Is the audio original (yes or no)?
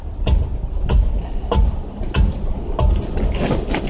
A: yes